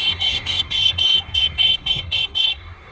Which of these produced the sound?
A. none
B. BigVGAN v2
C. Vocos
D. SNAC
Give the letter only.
D